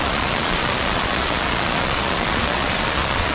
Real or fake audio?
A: fake